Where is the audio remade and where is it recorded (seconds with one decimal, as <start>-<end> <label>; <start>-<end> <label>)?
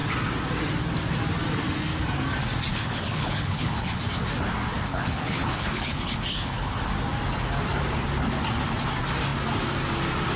0.0-2.7 recorded; 2.7-4.0 remade; 4.0-4.9 recorded; 4.9-6.8 remade; 6.8-10.4 recorded